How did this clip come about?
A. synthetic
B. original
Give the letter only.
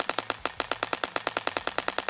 B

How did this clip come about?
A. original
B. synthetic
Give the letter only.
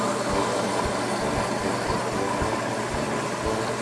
A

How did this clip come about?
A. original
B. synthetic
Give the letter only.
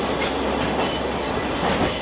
A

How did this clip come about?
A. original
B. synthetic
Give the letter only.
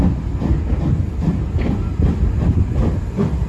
A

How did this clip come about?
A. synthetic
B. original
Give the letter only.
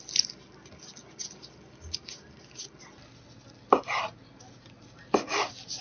B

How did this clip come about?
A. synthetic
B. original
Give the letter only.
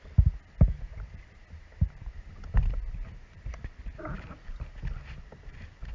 B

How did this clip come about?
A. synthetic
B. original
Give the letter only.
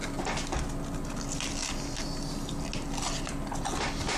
B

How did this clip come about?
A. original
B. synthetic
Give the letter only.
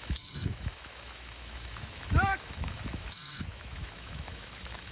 B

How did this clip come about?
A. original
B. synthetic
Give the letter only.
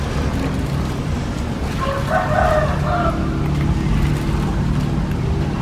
A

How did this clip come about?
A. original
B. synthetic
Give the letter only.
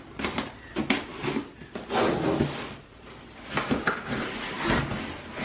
A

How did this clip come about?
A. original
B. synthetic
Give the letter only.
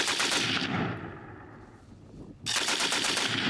A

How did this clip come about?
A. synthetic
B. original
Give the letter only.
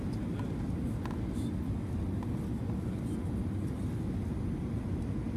B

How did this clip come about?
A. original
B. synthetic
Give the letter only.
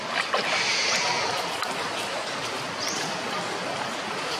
A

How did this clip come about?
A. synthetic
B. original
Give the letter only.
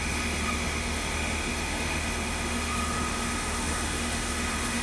A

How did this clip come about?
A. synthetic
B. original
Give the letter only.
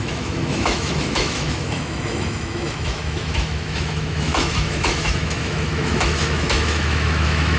A